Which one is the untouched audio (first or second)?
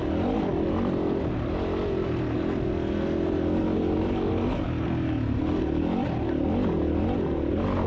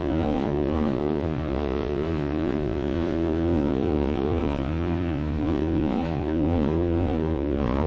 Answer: first